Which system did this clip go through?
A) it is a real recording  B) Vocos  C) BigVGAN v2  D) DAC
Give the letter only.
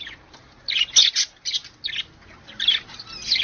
A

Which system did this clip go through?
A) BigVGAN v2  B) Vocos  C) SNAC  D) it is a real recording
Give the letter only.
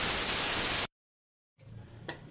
D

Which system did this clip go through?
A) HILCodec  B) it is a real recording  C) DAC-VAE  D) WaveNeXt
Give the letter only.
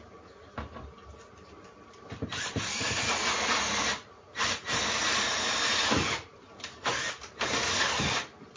B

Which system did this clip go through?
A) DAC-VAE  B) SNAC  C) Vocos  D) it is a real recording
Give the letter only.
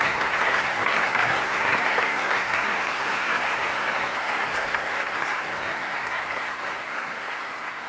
B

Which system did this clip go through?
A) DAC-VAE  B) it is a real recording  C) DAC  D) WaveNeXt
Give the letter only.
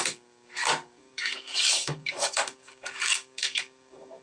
C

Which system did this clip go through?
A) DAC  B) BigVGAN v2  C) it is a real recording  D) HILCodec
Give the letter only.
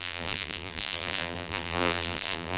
B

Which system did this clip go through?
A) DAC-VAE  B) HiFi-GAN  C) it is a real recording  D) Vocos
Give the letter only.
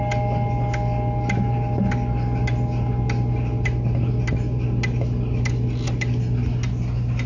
C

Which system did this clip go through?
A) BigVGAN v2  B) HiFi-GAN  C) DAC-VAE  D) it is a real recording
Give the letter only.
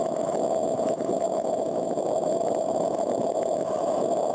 C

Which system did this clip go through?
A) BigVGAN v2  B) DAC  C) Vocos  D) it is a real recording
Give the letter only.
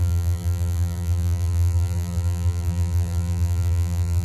A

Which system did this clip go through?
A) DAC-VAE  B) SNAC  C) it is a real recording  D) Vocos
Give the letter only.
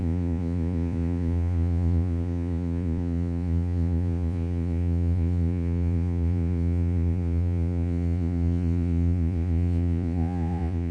D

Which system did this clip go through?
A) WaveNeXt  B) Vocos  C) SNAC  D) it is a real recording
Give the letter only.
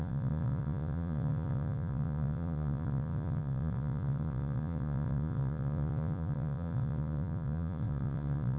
B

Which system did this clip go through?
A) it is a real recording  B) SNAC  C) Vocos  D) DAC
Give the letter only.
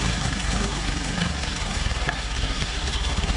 B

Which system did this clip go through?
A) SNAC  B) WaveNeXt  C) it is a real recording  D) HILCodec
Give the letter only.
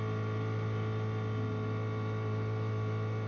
C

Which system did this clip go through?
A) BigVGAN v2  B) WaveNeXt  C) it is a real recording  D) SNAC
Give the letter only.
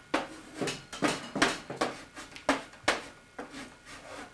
C